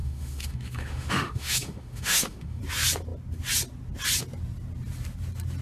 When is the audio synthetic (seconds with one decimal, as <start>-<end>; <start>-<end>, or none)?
0.0-2.6